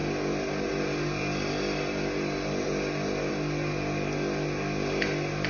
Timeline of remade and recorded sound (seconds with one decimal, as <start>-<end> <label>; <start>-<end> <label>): 0.0-5.5 recorded